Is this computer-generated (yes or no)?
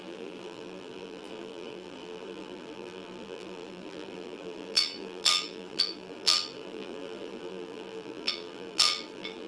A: yes